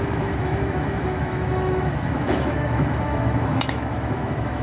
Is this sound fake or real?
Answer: fake